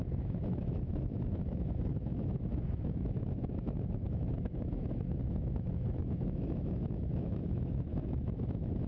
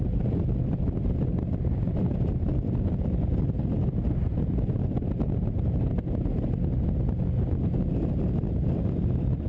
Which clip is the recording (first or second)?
second